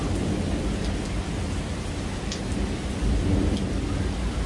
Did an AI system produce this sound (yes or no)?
no